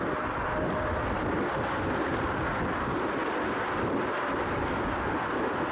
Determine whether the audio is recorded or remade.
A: recorded